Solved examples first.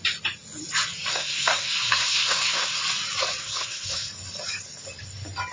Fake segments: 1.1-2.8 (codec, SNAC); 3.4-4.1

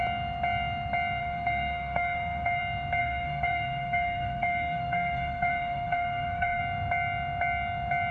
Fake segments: 1.2-2.6 (codec, SNAC); 3.0-6.6

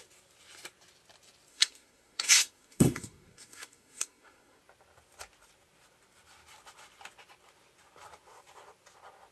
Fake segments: 1.5-4.6 (codec, SNAC)

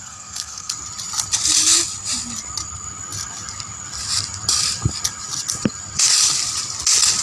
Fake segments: 0.0-0.7 (codec, SNAC)

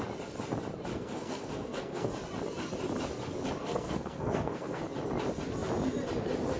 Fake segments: 0.9-2.1 (codec, SNAC); 3.6-4.8

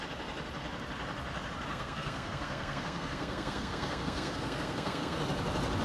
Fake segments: 1.7-5.2 (codec, SNAC)

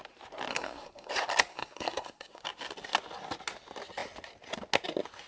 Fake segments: 0.5-1.1 (codec, SNAC); 1.5-2.4